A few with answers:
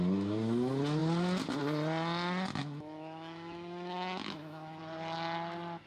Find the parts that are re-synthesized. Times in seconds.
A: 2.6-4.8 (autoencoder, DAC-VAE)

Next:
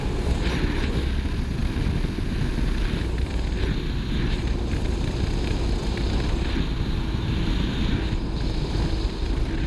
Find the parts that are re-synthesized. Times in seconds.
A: none

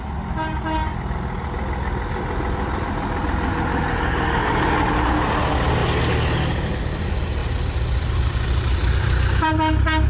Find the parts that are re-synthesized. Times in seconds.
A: 3.7-5.1 (vocoder, BigVGAN v2)

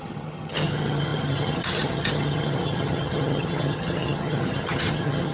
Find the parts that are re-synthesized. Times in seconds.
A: 0.0-5.3 (vocoder, HiFi-GAN)

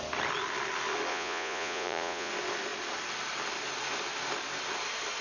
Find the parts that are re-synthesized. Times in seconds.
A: 1.1-2.3 (vocoder, Vocos)

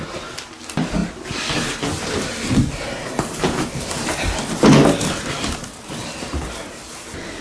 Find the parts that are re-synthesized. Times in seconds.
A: none